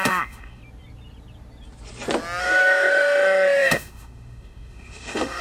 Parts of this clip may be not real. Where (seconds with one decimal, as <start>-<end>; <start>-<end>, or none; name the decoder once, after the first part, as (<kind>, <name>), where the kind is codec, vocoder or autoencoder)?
0.0-0.6 (autoencoder, DAC-VAE); 2.4-5.4